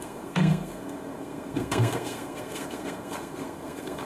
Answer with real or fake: fake